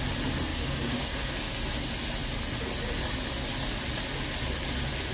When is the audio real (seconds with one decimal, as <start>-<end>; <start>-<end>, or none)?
0.0-0.5; 1.3-5.1